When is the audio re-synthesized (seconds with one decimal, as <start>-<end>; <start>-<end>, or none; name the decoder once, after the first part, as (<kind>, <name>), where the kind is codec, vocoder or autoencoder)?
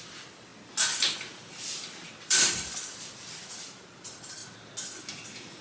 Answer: 0.0-0.5 (vocoder, BigVGAN v2); 2.2-4.4